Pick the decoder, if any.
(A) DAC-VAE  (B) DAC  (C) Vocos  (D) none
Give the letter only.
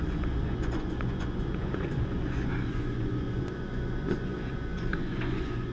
C